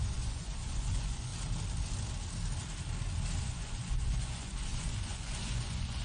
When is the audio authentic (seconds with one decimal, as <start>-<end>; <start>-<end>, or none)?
1.3-3.4